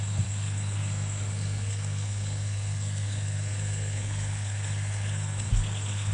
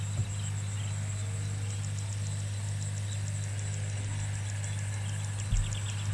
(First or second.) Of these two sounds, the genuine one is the second